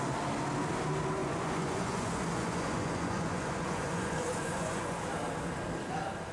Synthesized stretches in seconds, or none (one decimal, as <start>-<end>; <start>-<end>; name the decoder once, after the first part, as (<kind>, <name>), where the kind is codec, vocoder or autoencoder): 1.2-5.0 (vocoder, Vocos)